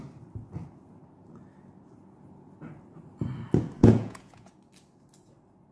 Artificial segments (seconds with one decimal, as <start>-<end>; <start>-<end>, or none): 3.8-4.5